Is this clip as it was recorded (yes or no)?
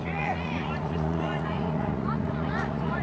no